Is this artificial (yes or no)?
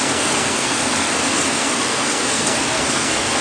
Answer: yes